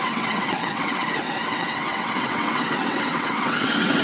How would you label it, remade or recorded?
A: remade